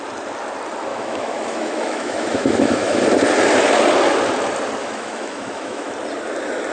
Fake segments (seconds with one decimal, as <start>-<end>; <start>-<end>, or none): 0.9-3.0; 4.8-5.9